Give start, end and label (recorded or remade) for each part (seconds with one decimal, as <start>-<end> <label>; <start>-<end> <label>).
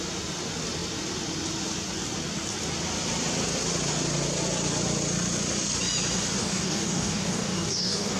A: 0.0-6.4 recorded; 6.4-8.2 remade